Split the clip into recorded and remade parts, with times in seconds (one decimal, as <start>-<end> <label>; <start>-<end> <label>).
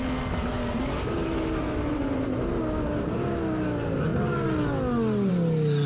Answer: 0.0-5.9 recorded